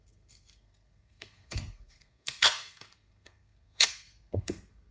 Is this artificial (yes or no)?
yes